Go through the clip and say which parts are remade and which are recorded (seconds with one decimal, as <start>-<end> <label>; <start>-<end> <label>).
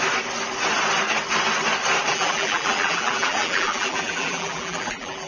0.0-2.1 recorded; 2.1-5.3 remade